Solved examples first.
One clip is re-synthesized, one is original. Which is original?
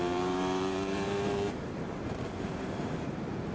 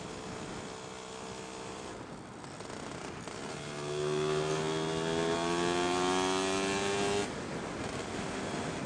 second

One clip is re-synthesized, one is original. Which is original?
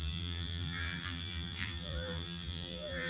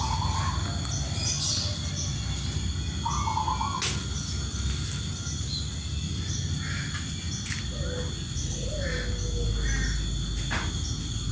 second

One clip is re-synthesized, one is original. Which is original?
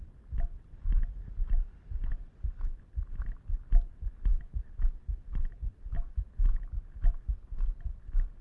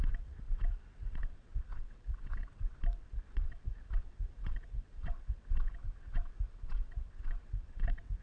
first